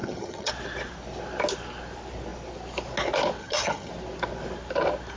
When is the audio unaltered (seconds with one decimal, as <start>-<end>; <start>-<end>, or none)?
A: 0.5-3.4; 3.9-5.2